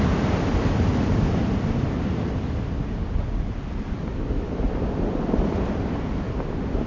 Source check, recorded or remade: recorded